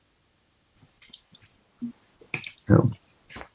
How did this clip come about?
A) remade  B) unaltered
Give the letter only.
B